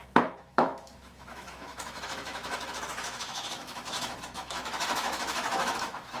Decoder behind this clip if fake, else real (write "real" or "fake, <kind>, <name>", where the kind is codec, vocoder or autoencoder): fake, autoencoder, DAC-VAE